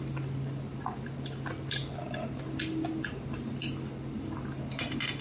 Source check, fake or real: real